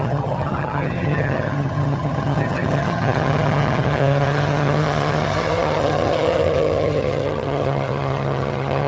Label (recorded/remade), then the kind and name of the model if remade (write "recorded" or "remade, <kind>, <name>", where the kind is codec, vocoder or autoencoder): remade, vocoder, HiFi-GAN